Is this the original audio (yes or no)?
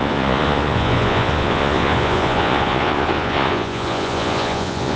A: no